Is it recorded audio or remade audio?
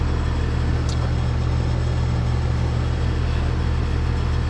recorded